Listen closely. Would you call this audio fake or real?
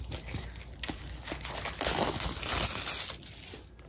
real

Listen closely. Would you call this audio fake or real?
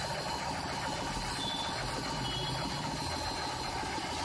real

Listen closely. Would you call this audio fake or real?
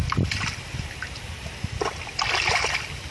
real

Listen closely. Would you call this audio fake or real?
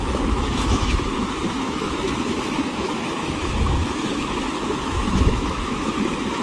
fake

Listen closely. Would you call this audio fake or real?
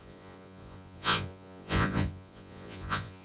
fake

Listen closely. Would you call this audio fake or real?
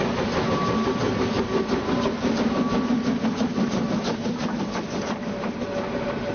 real